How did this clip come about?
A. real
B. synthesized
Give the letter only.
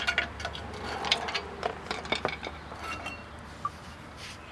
A